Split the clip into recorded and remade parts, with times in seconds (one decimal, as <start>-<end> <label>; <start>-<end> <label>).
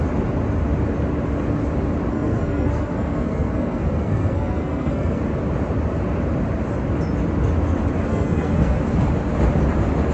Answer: 0.0-2.1 recorded; 2.1-5.2 remade; 5.2-8.1 recorded; 8.1-8.8 remade; 8.8-10.1 recorded